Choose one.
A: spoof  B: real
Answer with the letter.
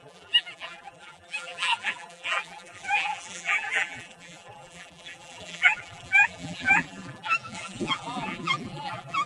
A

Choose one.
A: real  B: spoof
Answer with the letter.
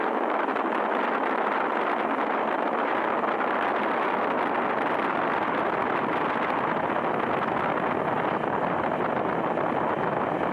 A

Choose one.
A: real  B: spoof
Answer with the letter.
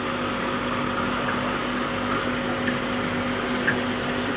A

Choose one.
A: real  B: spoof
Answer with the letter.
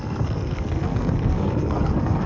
B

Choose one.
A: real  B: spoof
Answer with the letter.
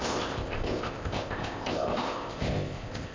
B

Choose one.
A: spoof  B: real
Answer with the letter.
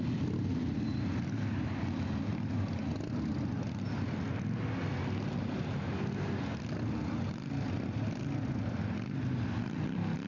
B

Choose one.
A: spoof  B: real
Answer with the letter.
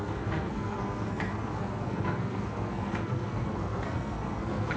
A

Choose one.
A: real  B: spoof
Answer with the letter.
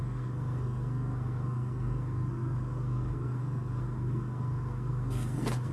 B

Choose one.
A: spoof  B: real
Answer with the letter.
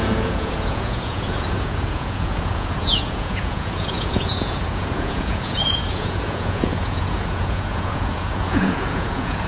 A